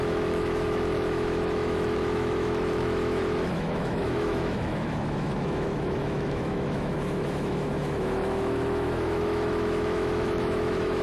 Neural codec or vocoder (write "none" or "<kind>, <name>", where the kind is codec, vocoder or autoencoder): autoencoder, DAC-VAE